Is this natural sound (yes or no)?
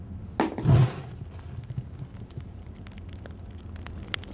yes